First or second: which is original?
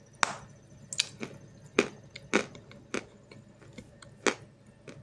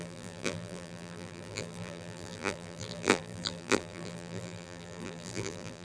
first